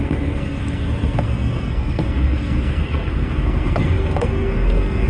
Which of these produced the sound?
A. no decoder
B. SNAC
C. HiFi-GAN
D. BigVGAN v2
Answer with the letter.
B